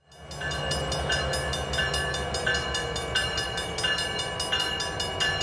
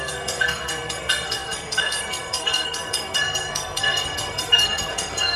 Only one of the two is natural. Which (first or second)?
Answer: first